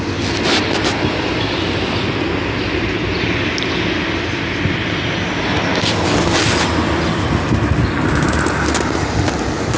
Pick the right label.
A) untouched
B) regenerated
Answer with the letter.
A